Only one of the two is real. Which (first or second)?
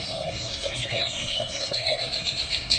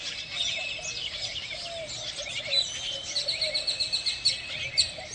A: second